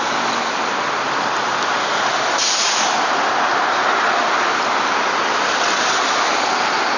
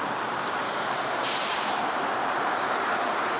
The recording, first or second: first